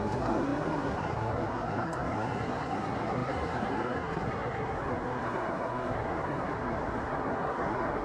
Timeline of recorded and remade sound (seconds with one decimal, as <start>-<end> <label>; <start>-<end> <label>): 0.0-8.0 remade